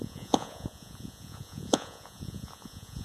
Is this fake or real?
fake